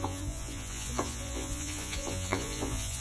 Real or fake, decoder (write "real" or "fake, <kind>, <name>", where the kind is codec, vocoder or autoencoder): fake, vocoder, Vocos